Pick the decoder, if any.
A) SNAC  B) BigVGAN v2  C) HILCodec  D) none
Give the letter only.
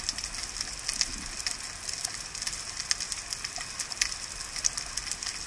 D